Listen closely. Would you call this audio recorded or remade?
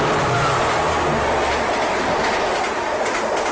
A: recorded